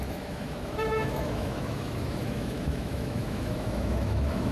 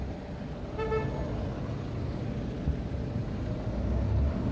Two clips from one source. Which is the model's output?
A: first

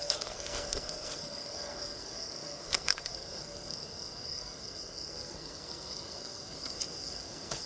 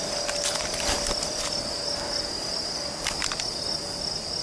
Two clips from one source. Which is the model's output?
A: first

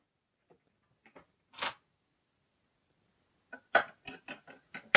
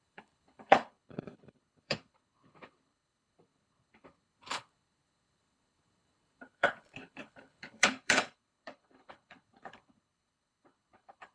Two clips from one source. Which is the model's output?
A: second